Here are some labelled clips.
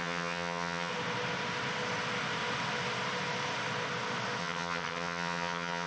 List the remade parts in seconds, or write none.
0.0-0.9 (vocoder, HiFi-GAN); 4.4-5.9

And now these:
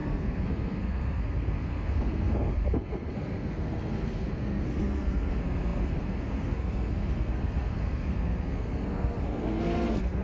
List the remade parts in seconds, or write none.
0.0-10.2 (codec, SNAC)

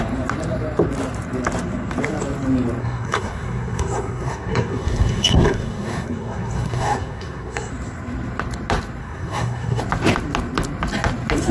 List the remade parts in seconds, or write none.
2.8-7.7 (codec, SNAC); 9.0-9.8

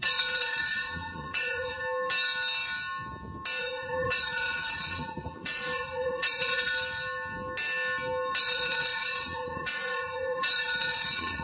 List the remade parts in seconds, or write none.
0.0-1.8 (vocoder, Vocos); 3.6-6.7; 8.4-11.4

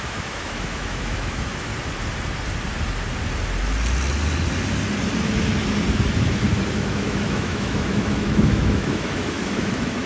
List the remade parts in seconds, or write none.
0.0-1.7 (autoencoder, DAC-VAE); 6.7-10.1

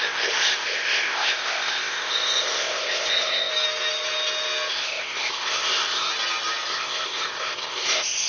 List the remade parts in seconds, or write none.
0.0-3.5 (codec, ZipCodec); 4.7-6.1; 6.7-8.3

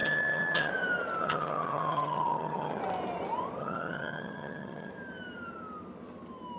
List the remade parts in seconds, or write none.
0.0-0.7 (vocoder, HiFi-GAN); 1.2-2.8; 3.6-4.9

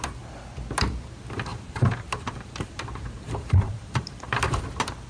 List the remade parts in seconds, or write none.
1.5-4.6 (vocoder, BigVGAN v2)